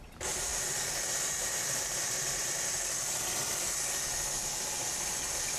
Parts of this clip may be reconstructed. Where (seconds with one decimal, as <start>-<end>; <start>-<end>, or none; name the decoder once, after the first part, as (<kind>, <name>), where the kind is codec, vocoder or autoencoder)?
none

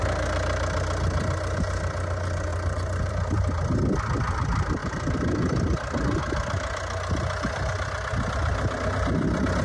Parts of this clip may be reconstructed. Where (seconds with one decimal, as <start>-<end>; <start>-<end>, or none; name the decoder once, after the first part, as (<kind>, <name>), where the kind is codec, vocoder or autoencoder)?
2.5-3.1 (vocoder, BigVGAN v2); 4.8-6.2